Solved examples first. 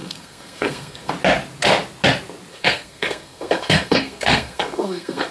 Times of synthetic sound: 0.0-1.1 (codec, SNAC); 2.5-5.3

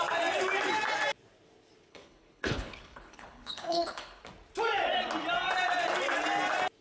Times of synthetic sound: 1.9-4.2 (codec, HILCodec)

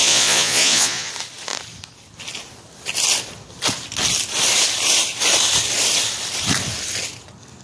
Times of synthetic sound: 0.0-1.1 (vocoder, Vocos)

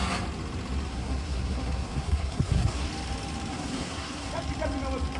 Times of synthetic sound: 0.9-2.9 (codec, SNAC); 3.5-4.3